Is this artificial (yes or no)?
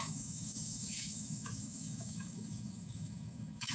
yes